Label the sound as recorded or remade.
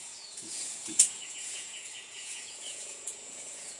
remade